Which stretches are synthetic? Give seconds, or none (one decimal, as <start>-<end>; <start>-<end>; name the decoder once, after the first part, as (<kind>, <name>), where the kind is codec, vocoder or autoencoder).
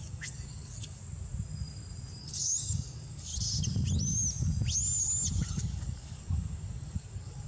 0.0-1.0 (codec, DAC); 2.2-3.3; 5.5-7.5